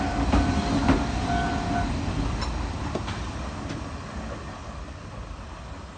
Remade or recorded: recorded